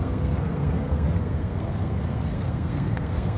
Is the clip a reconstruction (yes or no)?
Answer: yes